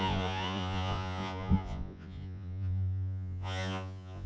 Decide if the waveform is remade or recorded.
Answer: remade